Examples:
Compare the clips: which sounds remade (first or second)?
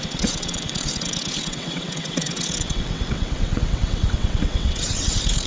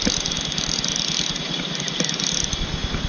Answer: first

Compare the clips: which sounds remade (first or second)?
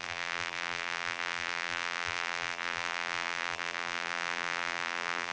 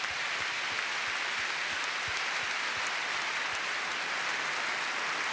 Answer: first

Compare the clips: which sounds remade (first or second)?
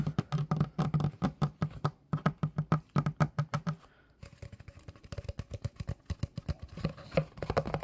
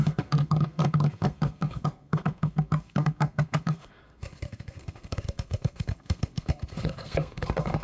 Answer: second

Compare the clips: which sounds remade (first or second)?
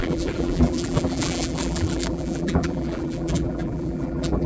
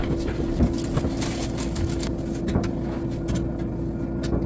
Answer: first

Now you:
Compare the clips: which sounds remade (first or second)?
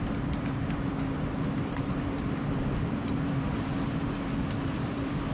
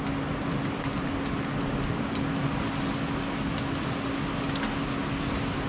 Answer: first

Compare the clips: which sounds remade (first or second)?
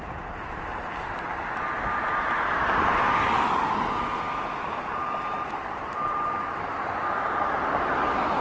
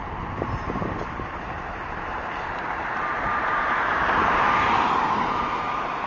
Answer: second